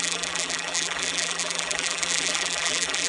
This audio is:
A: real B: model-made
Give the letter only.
B